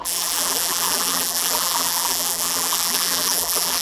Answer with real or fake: fake